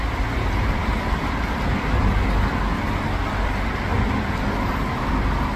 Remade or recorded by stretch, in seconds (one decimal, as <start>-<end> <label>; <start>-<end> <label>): 0.0-5.6 recorded